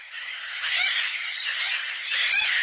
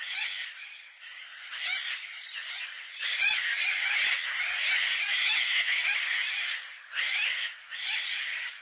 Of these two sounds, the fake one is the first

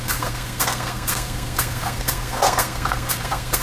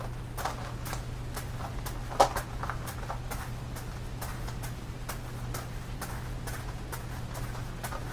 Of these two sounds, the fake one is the first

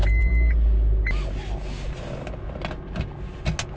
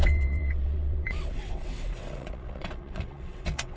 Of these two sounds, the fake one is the second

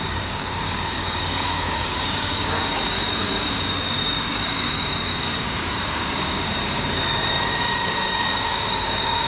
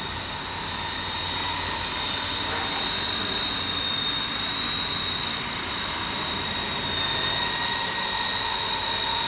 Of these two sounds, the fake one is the first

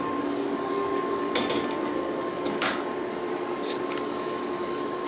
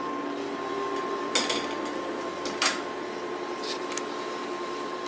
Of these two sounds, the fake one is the first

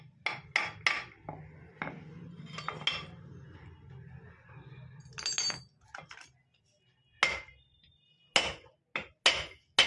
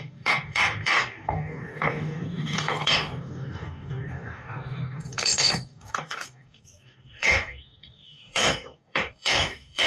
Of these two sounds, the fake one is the second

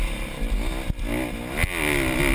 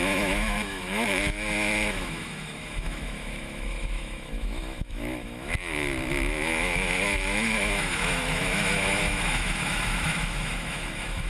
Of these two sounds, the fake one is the second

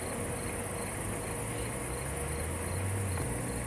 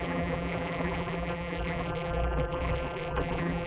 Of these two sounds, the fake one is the second